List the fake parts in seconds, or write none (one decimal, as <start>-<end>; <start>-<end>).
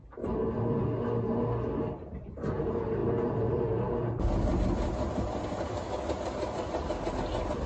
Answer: none